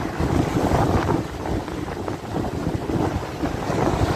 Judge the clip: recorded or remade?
recorded